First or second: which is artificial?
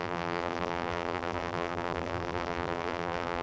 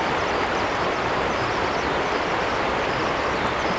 first